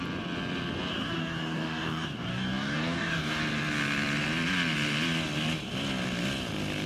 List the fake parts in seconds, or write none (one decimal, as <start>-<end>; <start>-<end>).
0.9-3.4